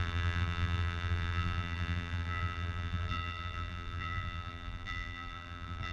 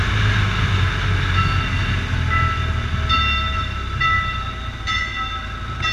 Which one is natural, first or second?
second